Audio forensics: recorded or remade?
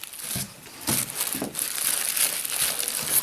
recorded